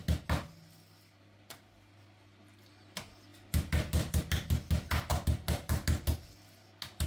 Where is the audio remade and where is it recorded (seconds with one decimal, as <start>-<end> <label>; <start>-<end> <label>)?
0.0-7.1 recorded

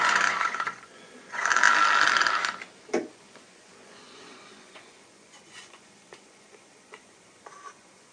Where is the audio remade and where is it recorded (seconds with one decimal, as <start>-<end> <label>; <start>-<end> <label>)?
0.0-1.5 remade; 1.5-3.1 recorded; 3.1-8.1 remade

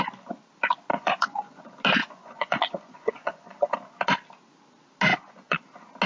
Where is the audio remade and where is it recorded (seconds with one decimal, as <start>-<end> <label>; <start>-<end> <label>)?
0.0-0.9 recorded; 0.9-1.6 remade; 1.6-2.0 recorded; 2.0-3.7 remade; 3.7-5.1 recorded; 5.1-5.6 remade; 5.6-6.1 recorded

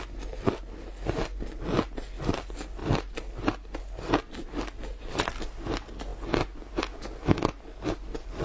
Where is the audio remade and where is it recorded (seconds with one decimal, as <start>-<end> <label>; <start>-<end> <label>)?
0.0-8.4 recorded

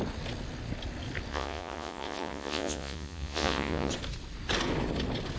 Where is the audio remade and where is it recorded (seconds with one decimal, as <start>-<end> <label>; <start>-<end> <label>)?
0.0-1.3 recorded; 1.3-3.9 remade; 3.9-5.4 recorded

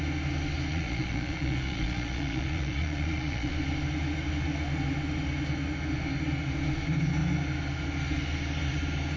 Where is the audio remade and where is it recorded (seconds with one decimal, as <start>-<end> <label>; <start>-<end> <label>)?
0.0-0.7 recorded; 0.7-3.5 remade; 3.5-9.2 recorded

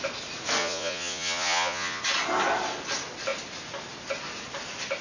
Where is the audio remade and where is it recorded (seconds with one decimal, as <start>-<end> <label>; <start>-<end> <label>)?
0.0-0.6 recorded; 0.6-2.0 remade; 2.0-5.0 recorded

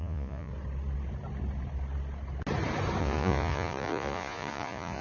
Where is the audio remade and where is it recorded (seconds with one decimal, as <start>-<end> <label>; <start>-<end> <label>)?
0.0-0.5 remade; 0.5-3.0 recorded; 3.0-5.0 remade